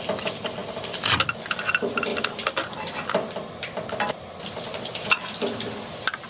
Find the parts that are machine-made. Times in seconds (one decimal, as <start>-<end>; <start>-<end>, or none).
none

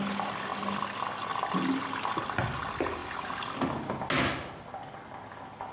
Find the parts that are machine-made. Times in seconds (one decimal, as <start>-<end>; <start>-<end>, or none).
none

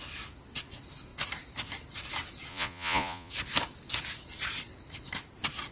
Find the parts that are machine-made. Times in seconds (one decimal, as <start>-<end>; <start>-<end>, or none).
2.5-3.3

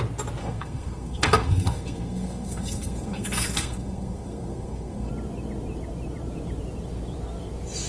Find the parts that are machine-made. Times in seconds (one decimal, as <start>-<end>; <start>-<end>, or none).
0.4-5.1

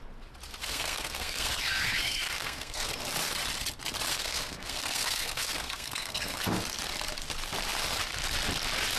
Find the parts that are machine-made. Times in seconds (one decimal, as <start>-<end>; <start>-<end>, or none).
0.6-2.9; 4.1-6.4

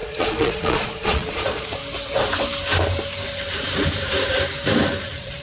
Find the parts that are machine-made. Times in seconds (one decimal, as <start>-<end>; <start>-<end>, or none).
0.0-1.8; 5.0-5.4

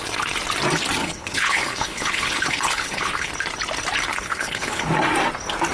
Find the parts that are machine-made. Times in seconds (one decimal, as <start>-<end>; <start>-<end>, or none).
1.0-3.3; 4.1-4.9

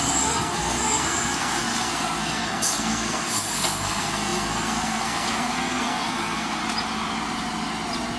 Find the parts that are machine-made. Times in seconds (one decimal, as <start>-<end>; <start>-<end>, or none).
0.0-6.6